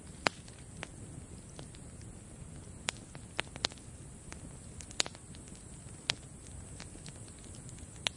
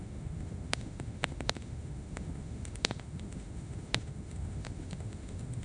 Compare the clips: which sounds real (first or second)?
first